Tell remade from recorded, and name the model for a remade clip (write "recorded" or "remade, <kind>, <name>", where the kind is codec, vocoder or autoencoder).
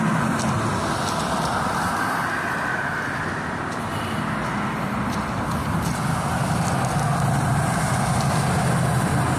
recorded